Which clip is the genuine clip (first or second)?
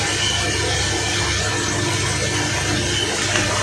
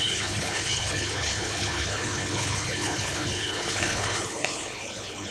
first